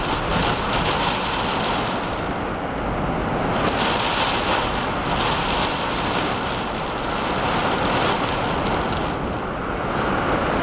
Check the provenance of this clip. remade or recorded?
recorded